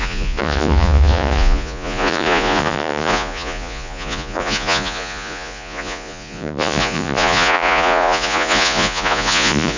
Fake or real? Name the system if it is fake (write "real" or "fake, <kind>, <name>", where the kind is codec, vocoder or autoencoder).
fake, vocoder, Vocos